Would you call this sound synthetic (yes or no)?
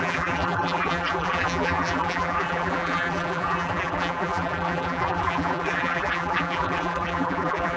yes